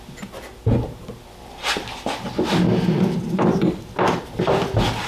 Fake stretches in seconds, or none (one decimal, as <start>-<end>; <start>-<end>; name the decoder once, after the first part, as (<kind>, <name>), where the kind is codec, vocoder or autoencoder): none

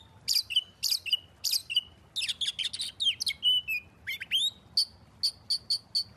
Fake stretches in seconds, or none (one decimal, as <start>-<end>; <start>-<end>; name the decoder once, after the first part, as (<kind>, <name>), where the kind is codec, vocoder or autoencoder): none

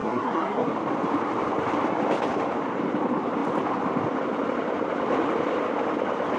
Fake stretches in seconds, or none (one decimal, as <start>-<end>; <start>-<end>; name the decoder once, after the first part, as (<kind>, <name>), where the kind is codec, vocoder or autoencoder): 0.0-0.7 (codec, SNAC)

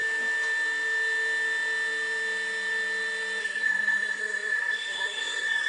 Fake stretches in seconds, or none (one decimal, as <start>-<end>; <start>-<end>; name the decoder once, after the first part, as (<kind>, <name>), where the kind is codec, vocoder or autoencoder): 3.4-5.7 (codec, SNAC)